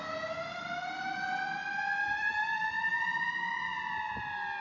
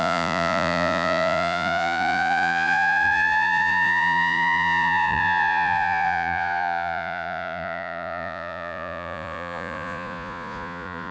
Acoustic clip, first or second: first